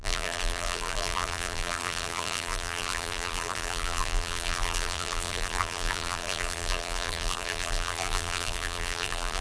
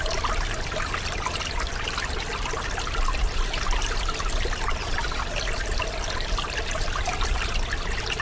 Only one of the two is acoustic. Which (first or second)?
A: second